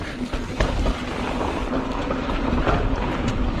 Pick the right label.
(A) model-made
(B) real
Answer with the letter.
B